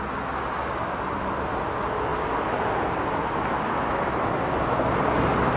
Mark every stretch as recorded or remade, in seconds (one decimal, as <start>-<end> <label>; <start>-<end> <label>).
0.0-5.6 recorded

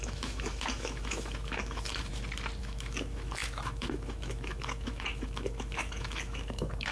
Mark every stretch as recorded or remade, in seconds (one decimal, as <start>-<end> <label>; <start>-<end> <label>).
0.0-2.1 remade; 2.1-2.6 recorded; 2.6-6.9 remade